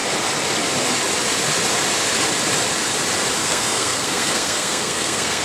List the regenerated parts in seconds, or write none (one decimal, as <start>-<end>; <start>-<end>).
3.4-5.4